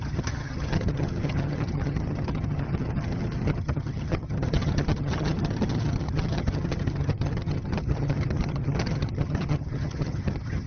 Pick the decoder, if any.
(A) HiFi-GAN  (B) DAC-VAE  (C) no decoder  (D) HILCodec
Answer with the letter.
A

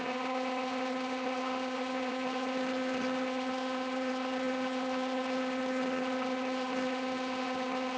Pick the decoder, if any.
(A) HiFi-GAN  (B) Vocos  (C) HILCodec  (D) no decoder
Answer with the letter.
A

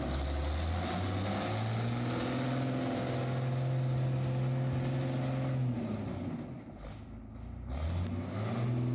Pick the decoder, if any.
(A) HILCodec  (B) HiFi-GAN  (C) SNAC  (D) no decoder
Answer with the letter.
D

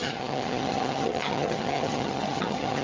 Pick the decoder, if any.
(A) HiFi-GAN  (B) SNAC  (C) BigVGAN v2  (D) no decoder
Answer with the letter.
A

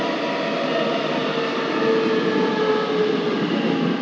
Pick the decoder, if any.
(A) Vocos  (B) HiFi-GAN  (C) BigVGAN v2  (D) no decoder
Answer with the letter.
D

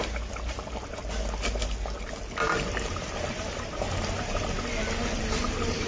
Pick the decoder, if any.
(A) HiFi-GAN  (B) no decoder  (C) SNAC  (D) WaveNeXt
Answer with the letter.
B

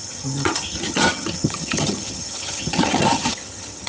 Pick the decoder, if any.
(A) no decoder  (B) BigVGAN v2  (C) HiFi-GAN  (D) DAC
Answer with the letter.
C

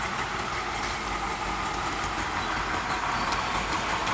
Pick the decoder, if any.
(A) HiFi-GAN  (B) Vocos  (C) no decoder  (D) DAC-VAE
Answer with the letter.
C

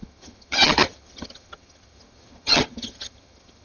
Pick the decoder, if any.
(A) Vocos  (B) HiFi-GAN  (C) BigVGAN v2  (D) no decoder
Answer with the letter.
B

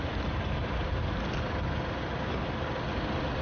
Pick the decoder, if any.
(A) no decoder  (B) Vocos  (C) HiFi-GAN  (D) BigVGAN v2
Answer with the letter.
A